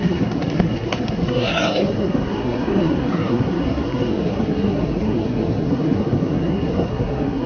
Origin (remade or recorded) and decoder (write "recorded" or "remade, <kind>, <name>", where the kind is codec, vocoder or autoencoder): remade, codec, SNAC